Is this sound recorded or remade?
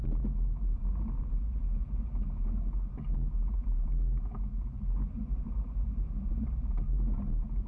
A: remade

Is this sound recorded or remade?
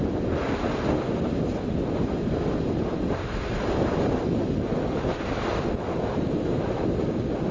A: recorded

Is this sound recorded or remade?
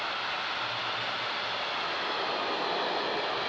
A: recorded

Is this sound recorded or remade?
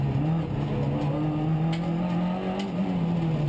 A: recorded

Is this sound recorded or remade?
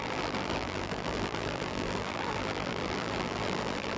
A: remade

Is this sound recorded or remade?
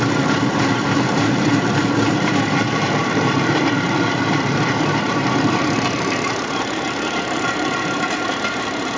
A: remade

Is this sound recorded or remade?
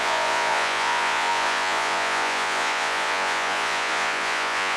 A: remade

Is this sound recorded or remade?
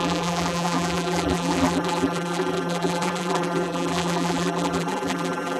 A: remade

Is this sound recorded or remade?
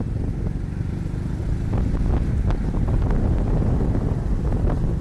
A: recorded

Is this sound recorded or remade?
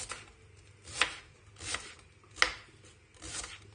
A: recorded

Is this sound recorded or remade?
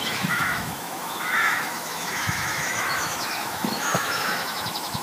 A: remade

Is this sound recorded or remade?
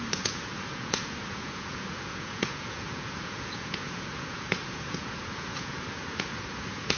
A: remade